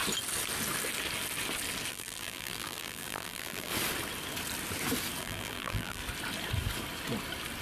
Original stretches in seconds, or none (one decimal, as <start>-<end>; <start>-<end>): 0.0-1.9; 3.7-5.2; 6.0-7.6